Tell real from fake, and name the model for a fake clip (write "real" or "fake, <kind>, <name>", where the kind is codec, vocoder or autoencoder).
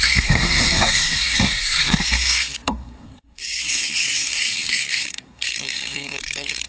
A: fake, codec, SNAC